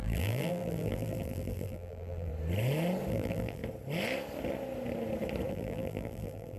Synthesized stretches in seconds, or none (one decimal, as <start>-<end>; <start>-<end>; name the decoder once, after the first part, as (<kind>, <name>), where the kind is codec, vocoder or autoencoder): 0.0-2.3 (vocoder, BigVGAN v2); 3.1-3.6; 5.5-6.6